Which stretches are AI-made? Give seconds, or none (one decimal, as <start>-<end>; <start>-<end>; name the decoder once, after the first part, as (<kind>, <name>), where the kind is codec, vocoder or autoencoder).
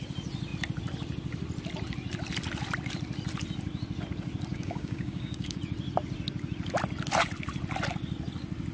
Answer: 4.5-5.6 (codec, DAC)